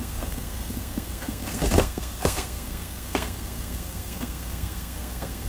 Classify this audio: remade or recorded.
remade